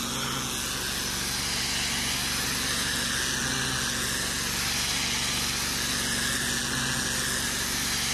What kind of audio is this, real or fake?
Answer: real